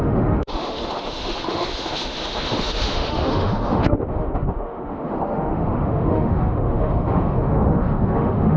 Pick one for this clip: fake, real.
fake